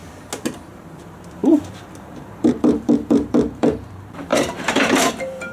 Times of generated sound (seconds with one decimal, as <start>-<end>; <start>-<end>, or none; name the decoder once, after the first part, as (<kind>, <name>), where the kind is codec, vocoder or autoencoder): 0.6-5.5 (vocoder, BigVGAN v2)